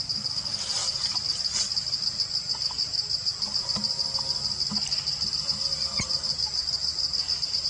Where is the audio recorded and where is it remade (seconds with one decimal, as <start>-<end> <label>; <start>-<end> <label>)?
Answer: 0.0-7.7 recorded